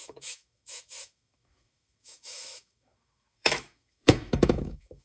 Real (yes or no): no